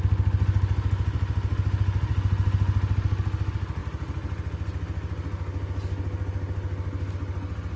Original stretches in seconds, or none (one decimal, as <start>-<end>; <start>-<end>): 0.0-7.8